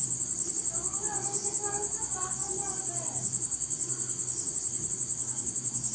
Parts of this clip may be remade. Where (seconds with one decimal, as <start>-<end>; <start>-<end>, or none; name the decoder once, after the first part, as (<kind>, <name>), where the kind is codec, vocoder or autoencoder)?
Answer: none